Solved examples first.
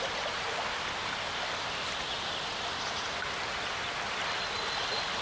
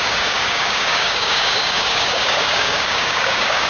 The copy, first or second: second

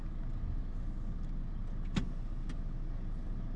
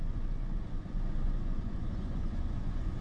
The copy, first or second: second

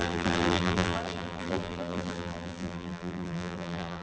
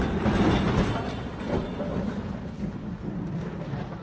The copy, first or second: first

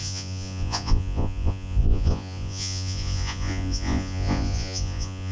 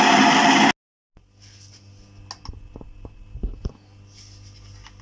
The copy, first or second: first